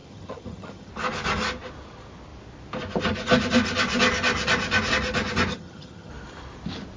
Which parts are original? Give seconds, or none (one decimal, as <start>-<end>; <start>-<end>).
0.9-5.5; 6.1-7.0